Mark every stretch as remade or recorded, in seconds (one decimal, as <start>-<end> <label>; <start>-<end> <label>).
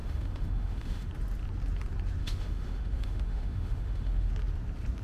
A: 0.0-1.1 remade; 1.1-2.2 recorded; 2.2-4.3 remade; 4.3-5.0 recorded